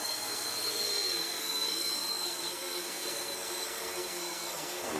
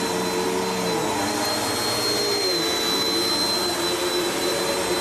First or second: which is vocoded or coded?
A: first